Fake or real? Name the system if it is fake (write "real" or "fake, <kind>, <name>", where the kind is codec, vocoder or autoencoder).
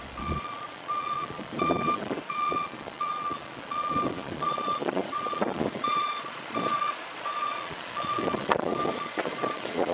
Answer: fake, vocoder, Vocos